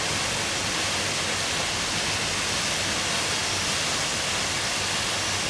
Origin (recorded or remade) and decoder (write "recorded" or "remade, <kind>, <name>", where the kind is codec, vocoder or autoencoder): recorded